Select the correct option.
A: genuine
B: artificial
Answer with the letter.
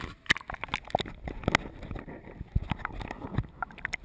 A